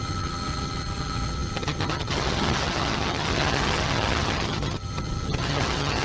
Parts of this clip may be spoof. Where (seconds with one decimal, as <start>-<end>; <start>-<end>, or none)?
0.0-6.0